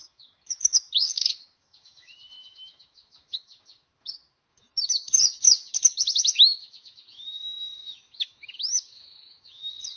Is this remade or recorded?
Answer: remade